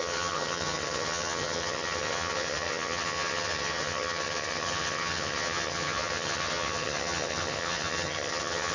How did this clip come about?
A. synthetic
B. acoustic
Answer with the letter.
A